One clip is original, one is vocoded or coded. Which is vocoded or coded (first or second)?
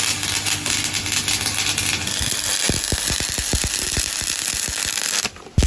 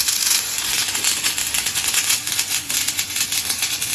second